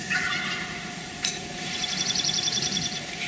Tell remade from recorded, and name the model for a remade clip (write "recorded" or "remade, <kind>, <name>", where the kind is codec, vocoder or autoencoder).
remade, vocoder, Vocos